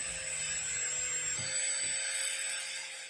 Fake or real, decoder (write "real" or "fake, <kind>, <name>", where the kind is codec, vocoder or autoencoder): real